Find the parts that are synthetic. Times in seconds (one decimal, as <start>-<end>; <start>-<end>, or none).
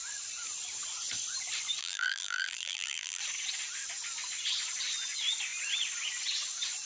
1.8-3.2